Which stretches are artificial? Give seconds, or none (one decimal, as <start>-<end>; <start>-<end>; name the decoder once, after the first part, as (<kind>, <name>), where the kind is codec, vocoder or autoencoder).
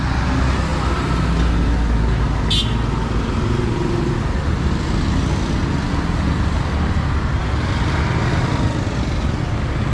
none